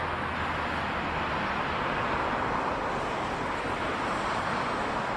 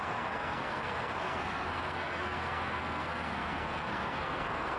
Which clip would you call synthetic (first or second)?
second